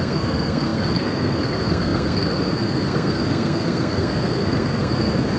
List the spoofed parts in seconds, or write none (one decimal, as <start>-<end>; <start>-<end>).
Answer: 0.0-5.4